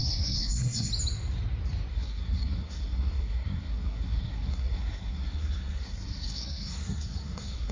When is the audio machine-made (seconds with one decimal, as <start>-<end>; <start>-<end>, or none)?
0.0-0.9; 1.9-7.7